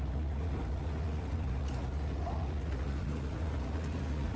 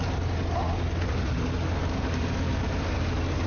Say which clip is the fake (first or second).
first